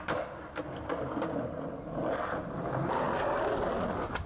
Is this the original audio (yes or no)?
yes